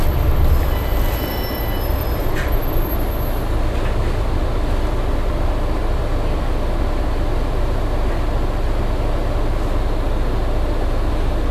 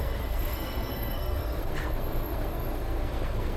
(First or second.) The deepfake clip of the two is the second